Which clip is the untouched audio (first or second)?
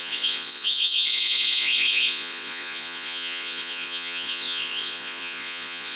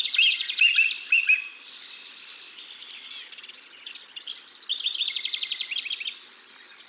second